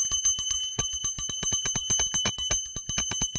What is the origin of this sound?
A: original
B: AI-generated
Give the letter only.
A